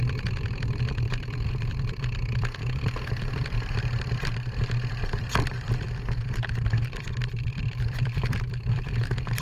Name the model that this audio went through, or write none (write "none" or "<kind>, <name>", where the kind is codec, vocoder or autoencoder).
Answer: vocoder, BigVGAN v2